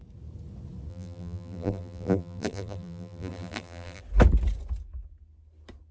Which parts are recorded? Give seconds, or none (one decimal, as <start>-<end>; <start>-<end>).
0.0-0.9; 4.0-5.9

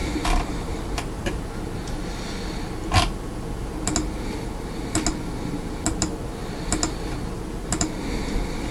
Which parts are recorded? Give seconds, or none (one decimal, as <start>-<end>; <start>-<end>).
1.4-8.7

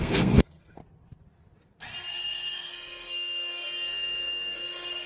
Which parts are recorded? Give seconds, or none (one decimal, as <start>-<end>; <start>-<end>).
0.8-2.1

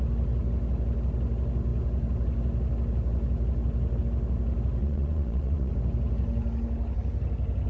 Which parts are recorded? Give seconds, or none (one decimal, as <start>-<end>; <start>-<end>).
0.0-4.8; 5.7-7.7

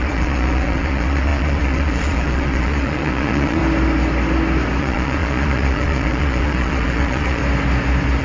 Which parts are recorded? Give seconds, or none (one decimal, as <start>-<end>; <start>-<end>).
3.6-4.8; 7.4-8.2